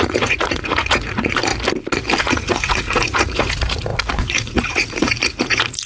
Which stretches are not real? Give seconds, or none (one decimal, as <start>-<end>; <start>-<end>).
0.0-1.5; 2.2-5.9